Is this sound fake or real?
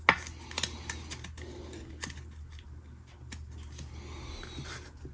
real